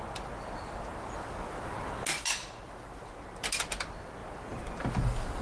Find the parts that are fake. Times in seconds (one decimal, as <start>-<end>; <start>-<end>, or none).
none